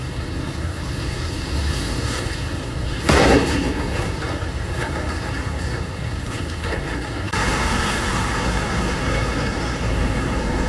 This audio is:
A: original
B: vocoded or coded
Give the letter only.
B